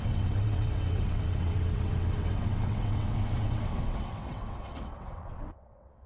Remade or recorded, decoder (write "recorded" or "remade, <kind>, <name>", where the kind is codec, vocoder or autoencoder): remade, vocoder, WaveNeXt